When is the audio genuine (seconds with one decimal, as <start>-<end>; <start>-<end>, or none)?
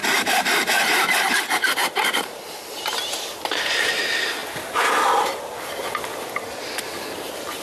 1.2-1.8; 3.9-7.6